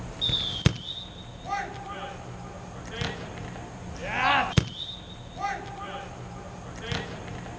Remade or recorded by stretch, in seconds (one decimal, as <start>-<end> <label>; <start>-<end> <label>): 0.0-7.6 recorded